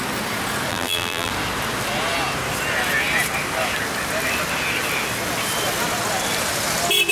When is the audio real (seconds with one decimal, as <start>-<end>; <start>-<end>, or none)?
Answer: 0.0-0.7; 1.3-7.1